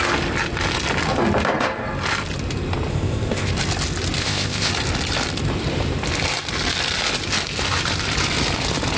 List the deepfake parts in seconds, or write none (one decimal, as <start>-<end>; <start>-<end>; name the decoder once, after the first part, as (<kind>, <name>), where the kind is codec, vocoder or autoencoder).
2.9-3.5 (codec, ZipCodec); 4.2-4.7